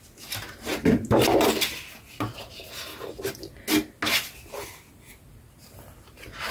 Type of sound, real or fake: real